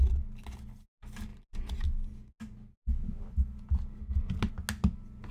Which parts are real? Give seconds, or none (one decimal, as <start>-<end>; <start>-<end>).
0.0-5.3